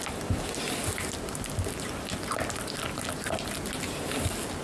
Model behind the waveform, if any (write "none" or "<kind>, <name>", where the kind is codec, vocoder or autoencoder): none